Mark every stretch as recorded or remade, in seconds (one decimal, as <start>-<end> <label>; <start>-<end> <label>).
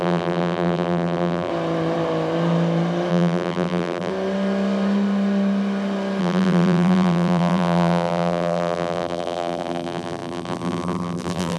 0.0-1.5 remade; 1.5-3.1 recorded; 3.1-4.1 remade; 4.1-6.2 recorded; 6.2-11.6 remade